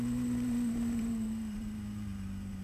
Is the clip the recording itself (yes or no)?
no